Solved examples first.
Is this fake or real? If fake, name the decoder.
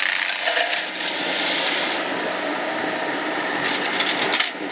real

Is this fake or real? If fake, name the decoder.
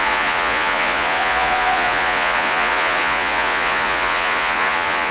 fake, vocoder, Vocos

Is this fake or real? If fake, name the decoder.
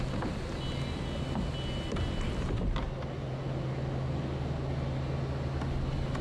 real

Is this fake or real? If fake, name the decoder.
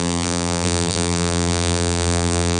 fake, vocoder, BigVGAN v2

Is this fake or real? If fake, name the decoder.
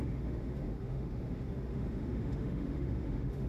fake, autoencoder, DAC-VAE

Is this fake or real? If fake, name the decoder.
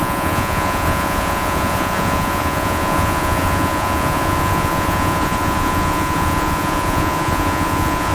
fake, vocoder, Vocos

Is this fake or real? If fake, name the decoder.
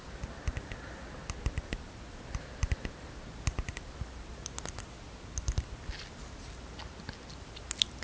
real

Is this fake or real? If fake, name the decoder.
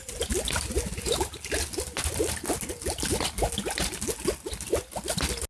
real